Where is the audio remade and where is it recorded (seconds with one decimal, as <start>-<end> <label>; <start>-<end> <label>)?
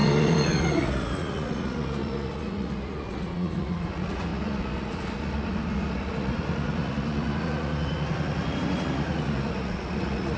0.0-10.4 remade